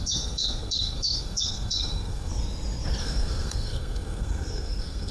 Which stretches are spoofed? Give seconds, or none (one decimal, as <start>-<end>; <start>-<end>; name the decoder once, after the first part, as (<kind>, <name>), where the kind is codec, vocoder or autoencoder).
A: 0.0-2.3 (codec, SNAC); 3.0-5.1